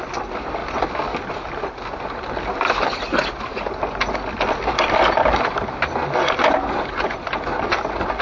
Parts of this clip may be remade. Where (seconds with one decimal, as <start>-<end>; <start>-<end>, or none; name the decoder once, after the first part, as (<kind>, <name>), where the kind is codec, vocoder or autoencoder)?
none

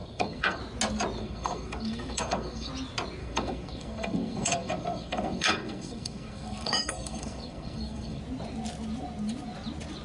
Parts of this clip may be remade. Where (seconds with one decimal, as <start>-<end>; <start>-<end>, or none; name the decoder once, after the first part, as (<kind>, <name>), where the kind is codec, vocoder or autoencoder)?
0.0-0.6 (codec, SNAC); 1.2-2.7; 3.2-8.2

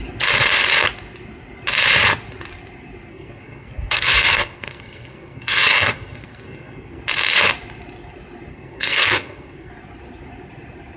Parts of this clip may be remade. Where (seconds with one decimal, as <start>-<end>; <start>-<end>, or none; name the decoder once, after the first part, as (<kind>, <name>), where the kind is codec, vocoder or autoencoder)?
3.1-7.0 (codec, SNAC); 8.5-9.7

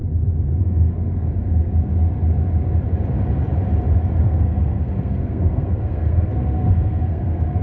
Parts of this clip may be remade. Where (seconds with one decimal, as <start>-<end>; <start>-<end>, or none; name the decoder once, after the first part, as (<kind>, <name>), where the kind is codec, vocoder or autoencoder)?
0.6-1.7 (codec, SNAC); 4.2-7.6

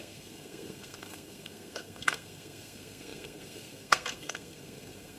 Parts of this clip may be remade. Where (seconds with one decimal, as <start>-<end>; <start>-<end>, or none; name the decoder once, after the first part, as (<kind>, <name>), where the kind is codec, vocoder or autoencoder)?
0.0-5.2 (codec, SNAC)

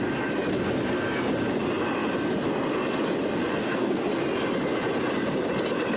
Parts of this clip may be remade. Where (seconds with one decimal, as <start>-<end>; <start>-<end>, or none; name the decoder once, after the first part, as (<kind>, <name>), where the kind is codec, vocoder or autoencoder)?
3.5-4.1 (codec, SNAC)